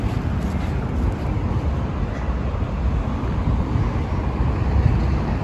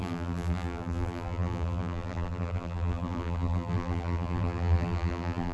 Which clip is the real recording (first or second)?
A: first